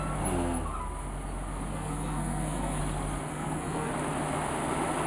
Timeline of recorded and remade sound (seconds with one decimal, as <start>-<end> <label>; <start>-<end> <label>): 0.0-1.7 recorded; 1.7-2.8 remade; 2.8-3.3 recorded; 3.3-3.9 remade; 3.9-5.1 recorded